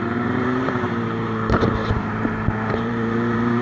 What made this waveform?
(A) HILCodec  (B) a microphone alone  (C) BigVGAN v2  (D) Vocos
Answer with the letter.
C